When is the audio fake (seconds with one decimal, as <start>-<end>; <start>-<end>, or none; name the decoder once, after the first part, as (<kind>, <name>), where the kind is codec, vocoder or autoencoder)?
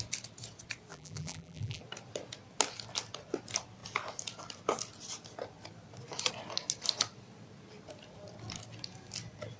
0.9-1.8 (vocoder, BigVGAN v2)